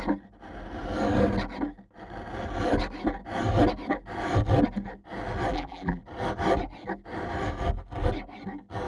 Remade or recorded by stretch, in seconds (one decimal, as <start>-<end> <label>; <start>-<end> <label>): 0.0-5.5 recorded; 5.5-6.0 remade; 6.0-8.9 recorded